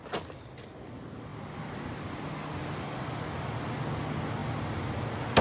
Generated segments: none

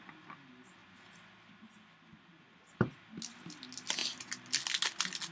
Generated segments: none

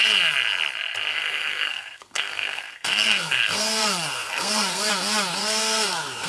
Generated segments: 1.1-4.9 (codec, SNAC); 5.4-6.3

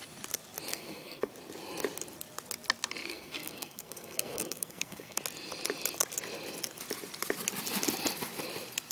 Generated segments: 0.7-1.3 (codec, SNAC); 3.0-5.2

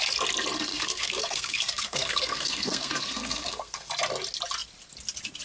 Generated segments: 0.7-3.9 (codec, SNAC)

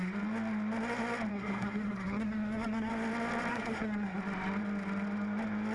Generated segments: 1.3-2.9 (codec, SNAC); 3.5-4.2

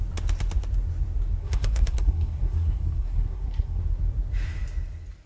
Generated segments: 1.4-3.8 (codec, SNAC)